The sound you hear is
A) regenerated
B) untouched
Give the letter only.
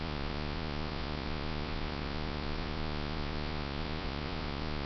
A